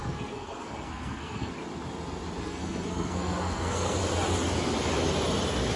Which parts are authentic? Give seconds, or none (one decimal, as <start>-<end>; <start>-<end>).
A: 1.5-2.4; 4.0-5.8